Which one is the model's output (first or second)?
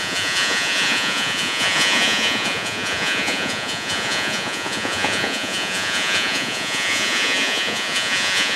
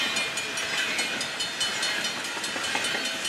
first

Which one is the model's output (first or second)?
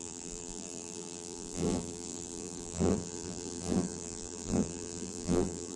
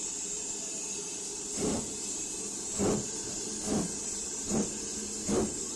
first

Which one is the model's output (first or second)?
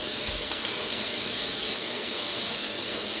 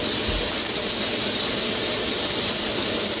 first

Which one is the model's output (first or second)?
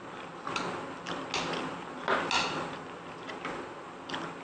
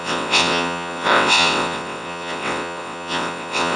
second